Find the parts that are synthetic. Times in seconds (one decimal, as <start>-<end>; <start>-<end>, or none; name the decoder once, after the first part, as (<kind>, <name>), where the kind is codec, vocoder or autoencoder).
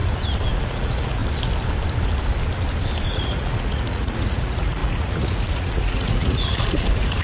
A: 0.5-1.2 (vocoder, Vocos); 3.1-7.2